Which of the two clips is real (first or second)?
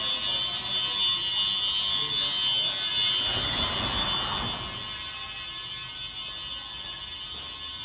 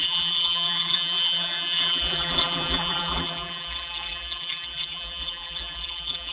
first